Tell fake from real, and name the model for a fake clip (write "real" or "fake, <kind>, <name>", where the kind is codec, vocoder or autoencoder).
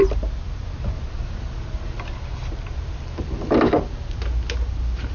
real